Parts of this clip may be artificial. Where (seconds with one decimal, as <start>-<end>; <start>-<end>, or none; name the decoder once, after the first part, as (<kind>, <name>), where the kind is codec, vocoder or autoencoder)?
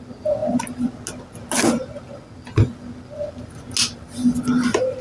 none